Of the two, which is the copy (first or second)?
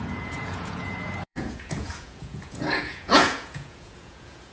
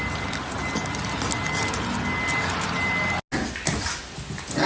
first